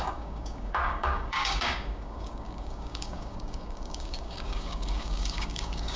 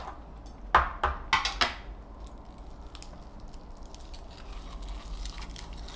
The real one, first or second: second